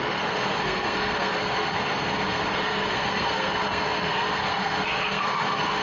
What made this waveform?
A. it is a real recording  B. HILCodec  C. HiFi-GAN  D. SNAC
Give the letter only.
D